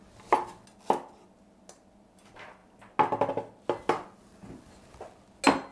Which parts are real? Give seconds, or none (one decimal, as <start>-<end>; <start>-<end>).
0.0-5.7